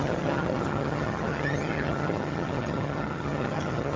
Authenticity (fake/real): fake